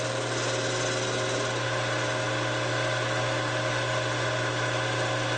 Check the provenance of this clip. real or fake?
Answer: real